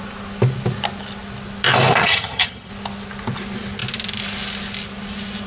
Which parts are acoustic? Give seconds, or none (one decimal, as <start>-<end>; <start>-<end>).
0.0-2.0; 2.7-5.5